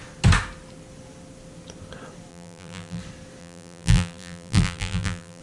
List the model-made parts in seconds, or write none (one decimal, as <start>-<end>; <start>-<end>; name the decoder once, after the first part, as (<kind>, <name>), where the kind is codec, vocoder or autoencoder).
2.3-3.0 (vocoder, BigVGAN v2); 3.4-5.4